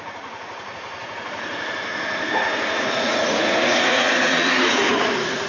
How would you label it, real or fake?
fake